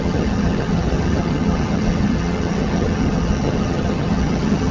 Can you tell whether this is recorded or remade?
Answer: remade